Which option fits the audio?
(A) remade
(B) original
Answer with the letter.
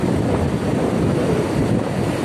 B